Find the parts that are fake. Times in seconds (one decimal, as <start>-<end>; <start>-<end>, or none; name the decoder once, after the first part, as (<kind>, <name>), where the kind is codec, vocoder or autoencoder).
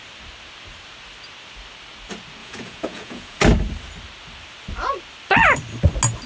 2.4-3.4 (vocoder, Vocos)